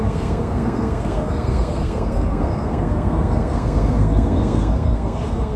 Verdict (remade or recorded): remade